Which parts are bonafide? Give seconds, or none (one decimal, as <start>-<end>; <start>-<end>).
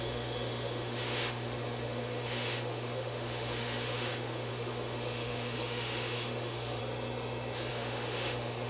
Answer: 6.8-7.7